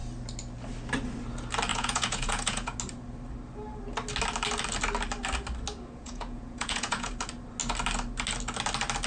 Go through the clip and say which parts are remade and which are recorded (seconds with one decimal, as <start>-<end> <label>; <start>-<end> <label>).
0.0-1.7 recorded; 1.7-2.8 remade; 2.8-6.0 recorded; 6.0-7.1 remade; 7.1-9.1 recorded